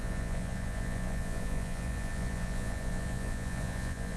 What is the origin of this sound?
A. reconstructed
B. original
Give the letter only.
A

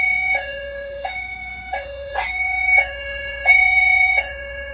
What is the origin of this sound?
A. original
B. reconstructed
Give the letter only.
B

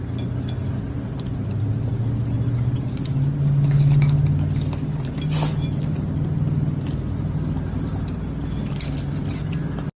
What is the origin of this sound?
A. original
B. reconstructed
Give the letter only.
A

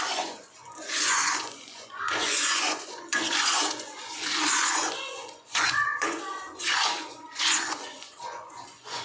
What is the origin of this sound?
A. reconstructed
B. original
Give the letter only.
A